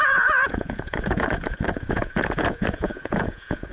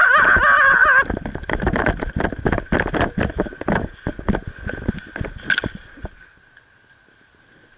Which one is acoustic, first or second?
second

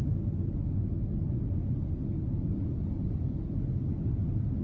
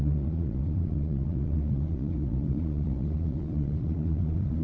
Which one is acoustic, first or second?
first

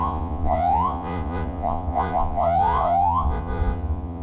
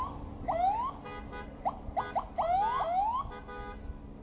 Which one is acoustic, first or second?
second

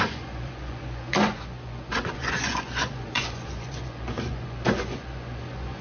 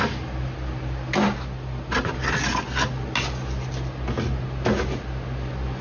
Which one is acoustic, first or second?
second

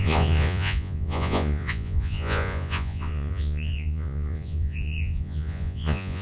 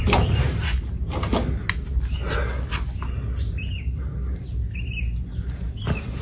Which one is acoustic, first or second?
second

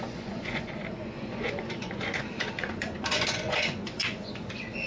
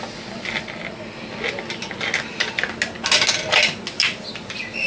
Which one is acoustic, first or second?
second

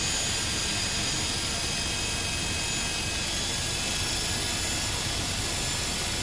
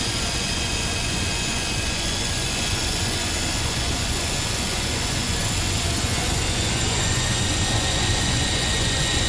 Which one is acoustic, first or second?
first